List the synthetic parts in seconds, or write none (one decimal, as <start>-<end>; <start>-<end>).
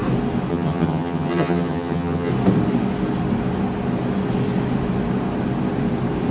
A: 0.5-2.3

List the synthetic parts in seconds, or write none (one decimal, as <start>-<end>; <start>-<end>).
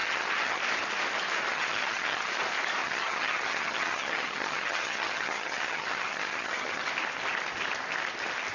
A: 0.0-0.6; 1.5-2.3; 2.8-6.8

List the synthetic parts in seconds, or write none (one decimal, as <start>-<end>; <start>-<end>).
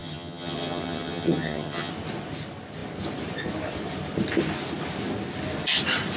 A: 0.0-1.9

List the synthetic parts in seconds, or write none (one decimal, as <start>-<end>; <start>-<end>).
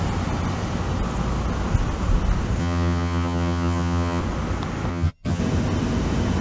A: 2.6-4.2; 4.9-5.4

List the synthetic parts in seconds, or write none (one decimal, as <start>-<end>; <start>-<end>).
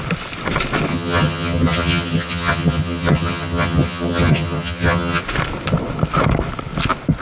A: 0.9-5.2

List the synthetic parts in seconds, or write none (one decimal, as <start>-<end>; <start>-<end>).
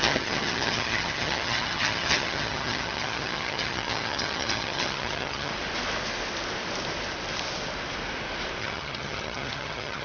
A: 0.0-5.5; 8.6-10.0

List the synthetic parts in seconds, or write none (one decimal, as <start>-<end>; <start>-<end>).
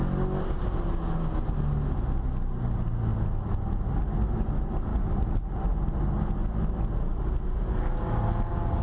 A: none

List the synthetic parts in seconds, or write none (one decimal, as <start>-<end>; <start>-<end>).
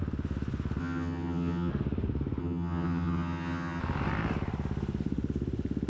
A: 0.8-1.7; 2.4-3.8